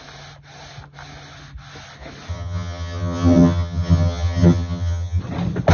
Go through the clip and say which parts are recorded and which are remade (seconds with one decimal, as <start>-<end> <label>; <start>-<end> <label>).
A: 0.0-2.3 recorded; 2.3-5.2 remade; 5.2-5.7 recorded